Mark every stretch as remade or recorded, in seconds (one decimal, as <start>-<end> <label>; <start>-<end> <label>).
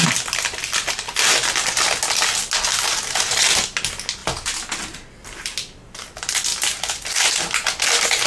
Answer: 0.0-8.3 recorded